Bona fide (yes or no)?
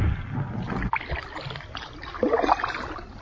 yes